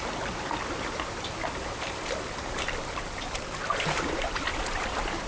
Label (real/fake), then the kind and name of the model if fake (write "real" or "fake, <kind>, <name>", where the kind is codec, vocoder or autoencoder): real